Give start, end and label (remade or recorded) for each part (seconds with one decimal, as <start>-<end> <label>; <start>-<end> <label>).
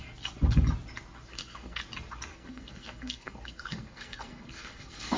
0.0-1.3 recorded; 1.3-1.8 remade; 1.8-2.3 recorded; 2.3-5.2 remade